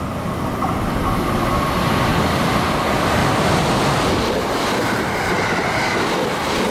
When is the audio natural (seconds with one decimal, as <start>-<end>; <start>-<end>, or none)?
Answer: 0.0-2.1; 2.7-3.2; 5.3-6.7